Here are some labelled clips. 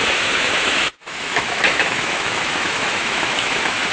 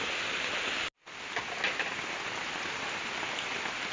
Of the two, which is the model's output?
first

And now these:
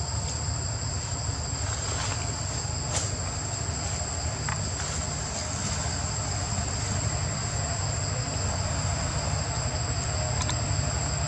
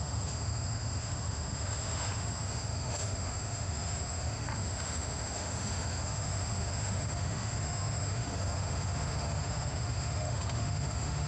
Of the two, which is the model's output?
second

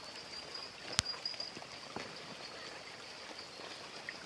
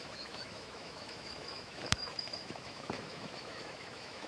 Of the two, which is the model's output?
second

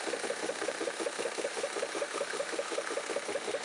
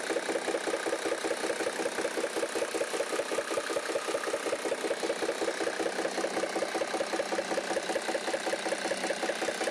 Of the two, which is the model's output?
first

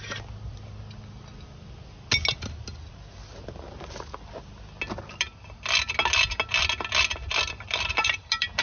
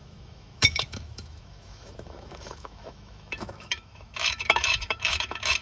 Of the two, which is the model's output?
second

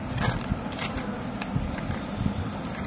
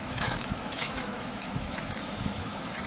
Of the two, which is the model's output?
second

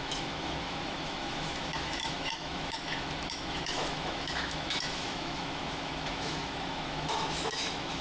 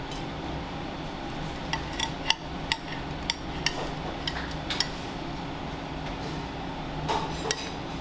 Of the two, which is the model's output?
first